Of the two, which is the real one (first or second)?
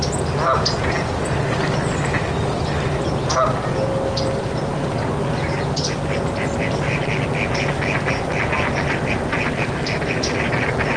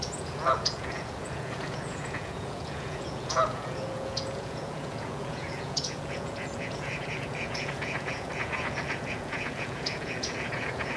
first